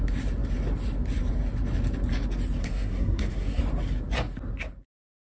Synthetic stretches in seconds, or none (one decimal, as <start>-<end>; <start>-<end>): 2.6-3.6